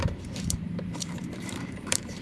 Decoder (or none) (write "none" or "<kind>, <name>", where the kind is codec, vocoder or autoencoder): vocoder, BigVGAN v2